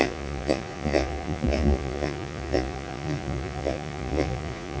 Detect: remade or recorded remade